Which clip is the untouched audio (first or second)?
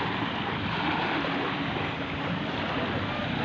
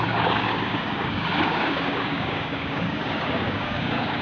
first